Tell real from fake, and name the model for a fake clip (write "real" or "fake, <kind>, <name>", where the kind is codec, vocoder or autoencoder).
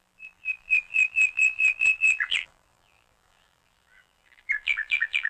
fake, vocoder, BigVGAN v2